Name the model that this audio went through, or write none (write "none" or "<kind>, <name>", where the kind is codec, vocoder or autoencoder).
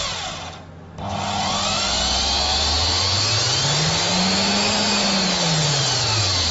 none